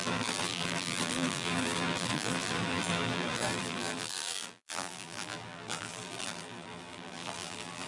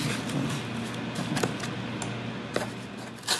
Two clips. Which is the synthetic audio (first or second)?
first